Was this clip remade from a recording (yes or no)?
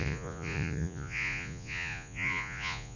yes